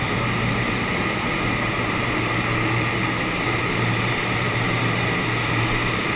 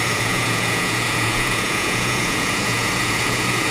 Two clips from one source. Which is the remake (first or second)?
second